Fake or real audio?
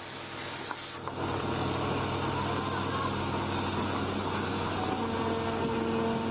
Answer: real